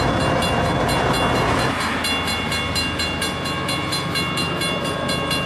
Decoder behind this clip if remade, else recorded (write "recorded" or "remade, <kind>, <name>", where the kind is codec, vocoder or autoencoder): recorded